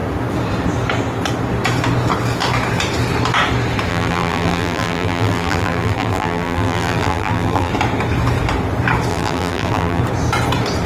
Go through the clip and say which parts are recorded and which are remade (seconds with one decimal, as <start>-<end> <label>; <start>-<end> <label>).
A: 0.0-3.9 recorded; 3.9-7.7 remade; 7.7-9.1 recorded; 9.1-10.0 remade; 10.0-10.9 recorded